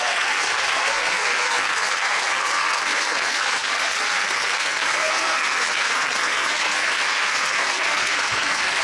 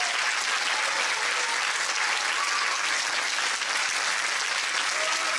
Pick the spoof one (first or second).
first